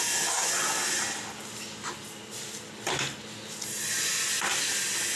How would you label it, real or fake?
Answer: real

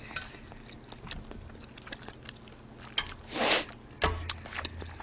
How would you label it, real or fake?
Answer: real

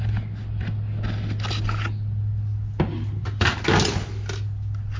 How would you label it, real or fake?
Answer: real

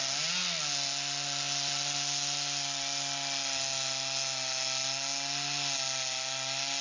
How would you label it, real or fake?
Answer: real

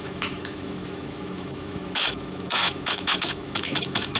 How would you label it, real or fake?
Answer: fake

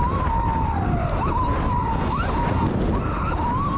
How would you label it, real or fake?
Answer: real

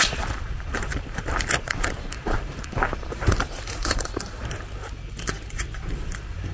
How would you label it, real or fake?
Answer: fake